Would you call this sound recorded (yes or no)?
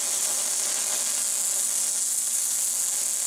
yes